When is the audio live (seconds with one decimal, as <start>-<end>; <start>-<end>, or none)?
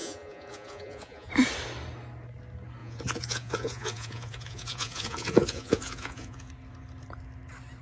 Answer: 1.3-2.8; 6.5-7.8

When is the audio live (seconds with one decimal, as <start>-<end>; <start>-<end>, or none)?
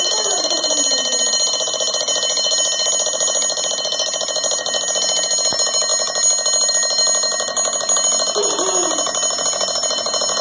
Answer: 0.0-10.4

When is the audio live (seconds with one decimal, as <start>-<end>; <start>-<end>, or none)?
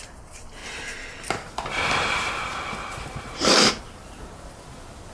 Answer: 0.0-0.6; 3.7-5.1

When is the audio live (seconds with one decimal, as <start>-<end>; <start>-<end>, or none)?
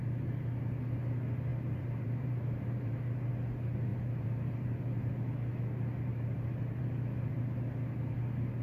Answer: 0.0-1.5; 3.3-3.9; 5.1-6.1; 6.8-8.6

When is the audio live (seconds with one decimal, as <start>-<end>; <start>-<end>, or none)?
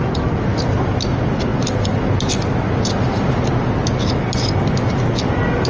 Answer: 0.0-5.7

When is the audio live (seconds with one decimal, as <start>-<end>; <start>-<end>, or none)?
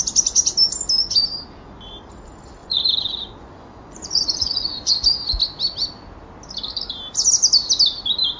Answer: 0.0-2.6; 4.9-8.4